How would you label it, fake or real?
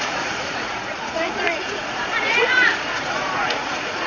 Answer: fake